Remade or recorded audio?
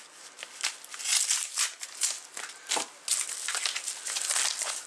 recorded